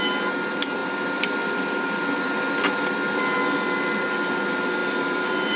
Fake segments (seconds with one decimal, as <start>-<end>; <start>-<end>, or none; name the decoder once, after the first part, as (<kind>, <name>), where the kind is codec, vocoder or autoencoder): 4.8-5.6 (vocoder, BigVGAN v2)